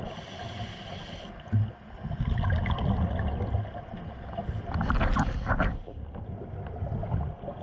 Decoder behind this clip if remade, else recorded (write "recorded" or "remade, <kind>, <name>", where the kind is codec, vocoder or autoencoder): recorded